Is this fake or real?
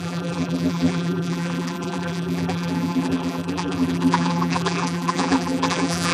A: fake